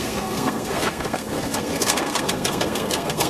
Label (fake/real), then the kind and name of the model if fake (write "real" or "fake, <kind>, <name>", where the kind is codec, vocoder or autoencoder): fake, codec, SNAC